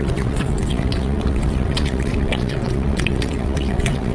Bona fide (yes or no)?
no